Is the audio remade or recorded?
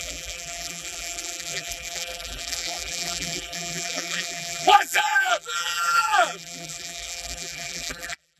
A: remade